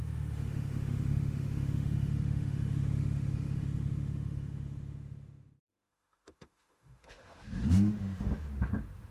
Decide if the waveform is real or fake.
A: fake